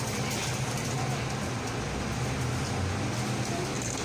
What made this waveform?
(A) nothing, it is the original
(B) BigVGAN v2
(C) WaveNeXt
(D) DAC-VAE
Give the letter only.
A